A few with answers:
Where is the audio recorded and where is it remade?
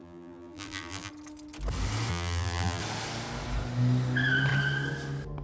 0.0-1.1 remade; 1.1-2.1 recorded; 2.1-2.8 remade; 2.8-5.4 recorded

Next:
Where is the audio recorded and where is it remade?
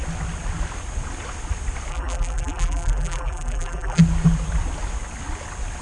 0.0-1.9 recorded; 1.9-4.0 remade; 4.0-5.8 recorded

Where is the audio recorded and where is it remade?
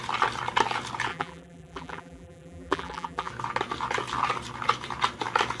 0.0-1.1 recorded; 1.1-3.3 remade; 3.3-5.6 recorded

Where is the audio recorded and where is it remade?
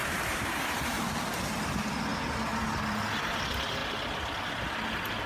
0.0-0.5 remade; 0.5-5.3 recorded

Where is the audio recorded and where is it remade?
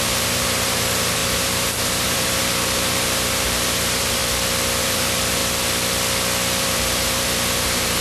0.0-4.2 remade; 4.2-4.8 recorded; 4.8-5.4 remade; 5.4-6.6 recorded; 6.6-8.0 remade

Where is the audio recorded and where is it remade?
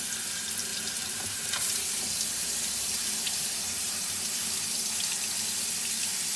0.0-0.7 recorded; 0.7-4.5 remade; 4.5-6.4 recorded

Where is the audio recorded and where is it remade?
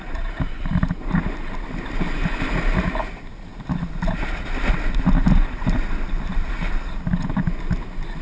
0.0-8.2 recorded